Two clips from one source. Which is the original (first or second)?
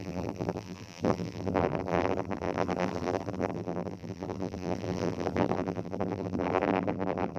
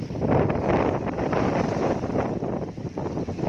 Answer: second